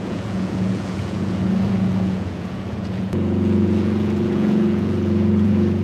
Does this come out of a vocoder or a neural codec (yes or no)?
yes